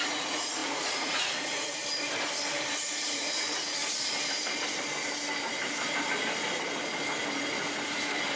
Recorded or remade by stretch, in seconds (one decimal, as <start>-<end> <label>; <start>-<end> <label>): 0.0-1.8 remade; 1.8-3.1 recorded; 3.1-3.8 remade; 3.8-8.4 recorded